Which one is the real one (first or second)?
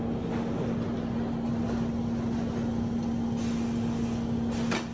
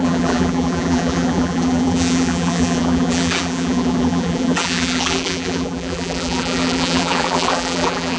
first